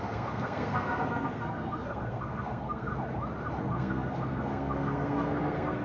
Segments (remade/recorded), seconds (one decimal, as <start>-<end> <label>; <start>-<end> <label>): 0.0-2.9 remade; 2.9-3.6 recorded; 3.6-5.8 remade